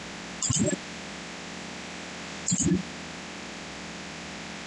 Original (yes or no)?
yes